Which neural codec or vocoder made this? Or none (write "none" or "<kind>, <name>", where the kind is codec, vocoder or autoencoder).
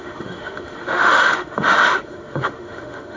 autoencoder, DAC-VAE